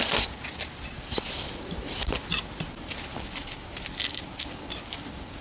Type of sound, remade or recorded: recorded